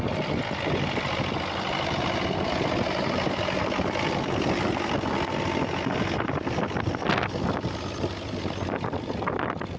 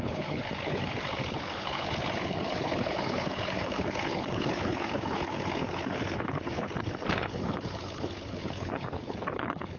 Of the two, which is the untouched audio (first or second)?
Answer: first